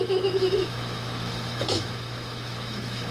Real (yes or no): no